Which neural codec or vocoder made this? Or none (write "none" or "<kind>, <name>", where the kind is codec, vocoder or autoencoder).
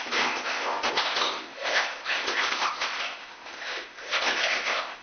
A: codec, ZipCodec